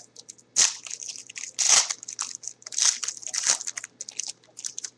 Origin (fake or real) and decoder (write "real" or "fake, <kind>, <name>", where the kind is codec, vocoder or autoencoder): real